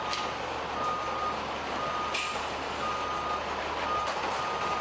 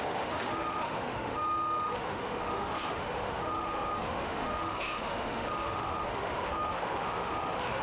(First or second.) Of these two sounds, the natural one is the first